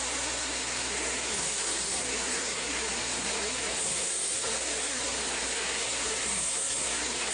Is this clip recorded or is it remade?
remade